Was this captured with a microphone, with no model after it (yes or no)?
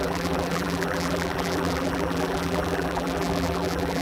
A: no